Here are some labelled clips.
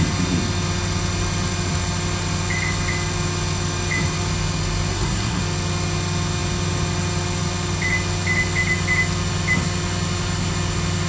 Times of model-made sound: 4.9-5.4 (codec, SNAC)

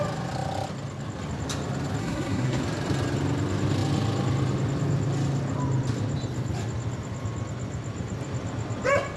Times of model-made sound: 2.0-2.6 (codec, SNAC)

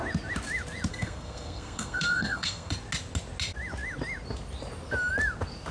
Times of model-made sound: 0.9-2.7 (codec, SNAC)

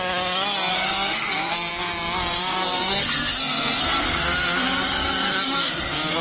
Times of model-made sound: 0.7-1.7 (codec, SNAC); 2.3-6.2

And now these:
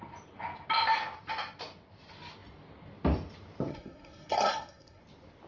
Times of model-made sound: 3.7-5.0 (codec, SNAC)

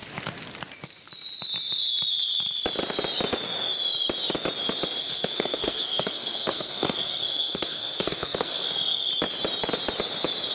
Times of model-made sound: 5.0-9.1 (codec, SNAC)

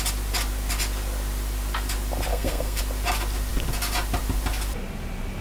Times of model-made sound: 2.3-2.8 (codec, SNAC)